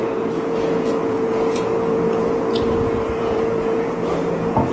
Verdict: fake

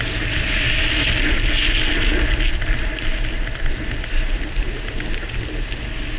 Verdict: real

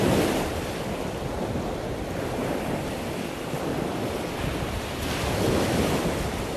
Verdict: real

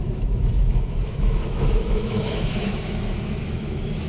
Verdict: fake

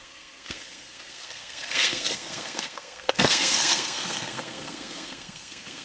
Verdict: fake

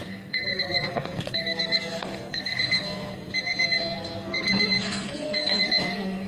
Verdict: fake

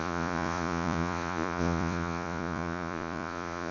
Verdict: fake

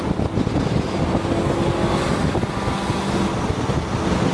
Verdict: real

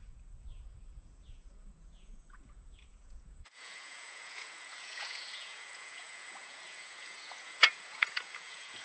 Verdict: fake